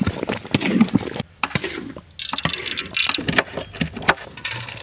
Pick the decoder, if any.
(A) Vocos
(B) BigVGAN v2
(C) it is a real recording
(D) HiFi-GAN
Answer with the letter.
C